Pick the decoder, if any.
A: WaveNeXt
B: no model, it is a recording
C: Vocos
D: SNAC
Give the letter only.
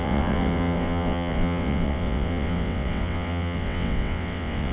A